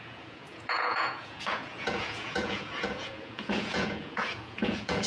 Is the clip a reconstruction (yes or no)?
yes